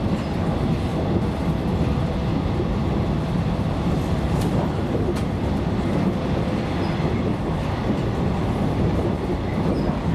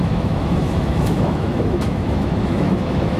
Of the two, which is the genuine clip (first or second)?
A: first